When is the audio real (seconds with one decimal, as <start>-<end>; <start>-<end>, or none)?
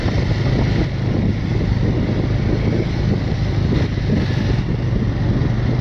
0.0-5.8